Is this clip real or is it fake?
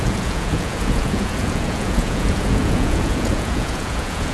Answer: fake